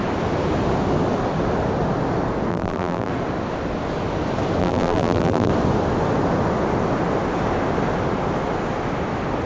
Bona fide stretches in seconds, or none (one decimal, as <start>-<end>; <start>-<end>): 0.0-2.5; 3.1-4.6; 5.5-9.5